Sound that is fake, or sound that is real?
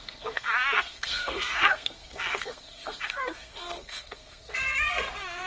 fake